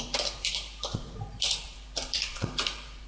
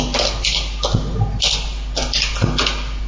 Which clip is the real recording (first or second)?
second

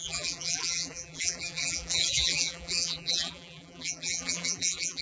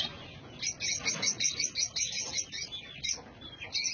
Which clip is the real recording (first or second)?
second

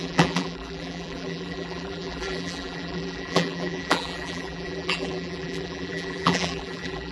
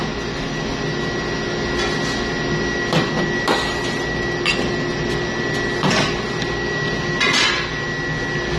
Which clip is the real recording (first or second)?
second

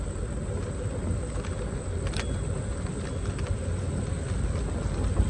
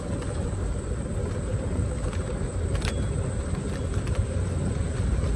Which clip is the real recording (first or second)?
first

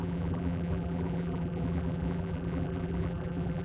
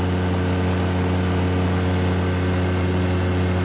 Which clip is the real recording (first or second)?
second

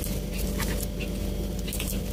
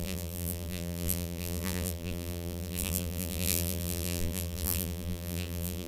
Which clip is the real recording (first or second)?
first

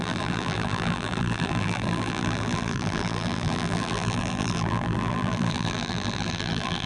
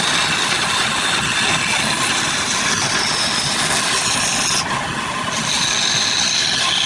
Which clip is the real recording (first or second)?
second